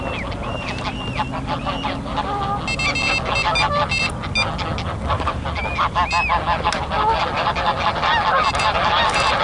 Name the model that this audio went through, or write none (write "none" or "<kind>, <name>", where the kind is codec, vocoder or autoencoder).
none